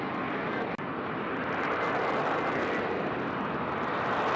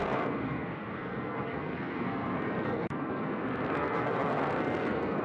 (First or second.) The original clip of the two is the first